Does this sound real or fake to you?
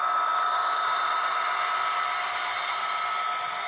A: real